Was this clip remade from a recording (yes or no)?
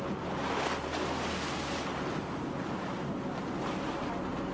no